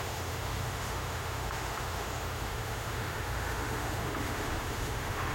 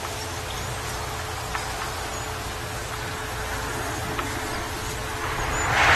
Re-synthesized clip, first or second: first